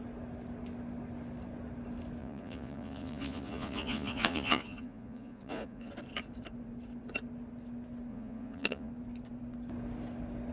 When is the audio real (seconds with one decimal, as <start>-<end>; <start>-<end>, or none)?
0.0-2.2; 5.9-8.1; 8.9-10.5